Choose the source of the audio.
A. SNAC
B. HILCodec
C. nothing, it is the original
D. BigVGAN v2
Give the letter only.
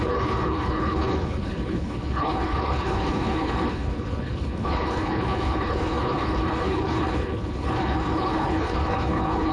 B